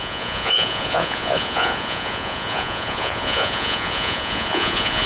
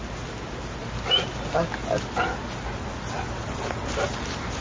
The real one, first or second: second